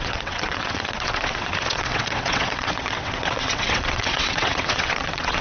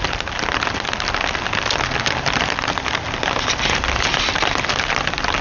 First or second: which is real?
second